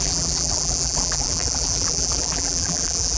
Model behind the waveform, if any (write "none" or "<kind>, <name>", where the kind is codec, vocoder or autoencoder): vocoder, BigVGAN v2